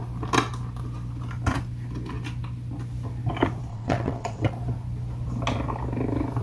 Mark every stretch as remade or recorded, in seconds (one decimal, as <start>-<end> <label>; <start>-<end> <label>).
0.0-3.7 recorded; 3.7-4.5 remade; 4.5-6.4 recorded

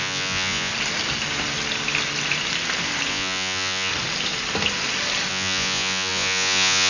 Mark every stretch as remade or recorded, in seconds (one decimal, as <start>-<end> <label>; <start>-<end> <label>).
0.0-0.7 remade; 0.7-3.1 recorded; 3.1-3.9 remade; 3.9-5.3 recorded; 5.3-6.9 remade

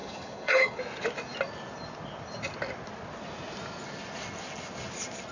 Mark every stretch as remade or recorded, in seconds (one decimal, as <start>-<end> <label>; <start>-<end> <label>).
0.0-0.8 remade; 0.8-5.3 recorded